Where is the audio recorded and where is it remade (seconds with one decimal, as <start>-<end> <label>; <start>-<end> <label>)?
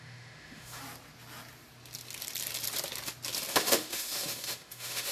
0.0-0.8 remade; 0.8-3.5 recorded; 3.5-5.1 remade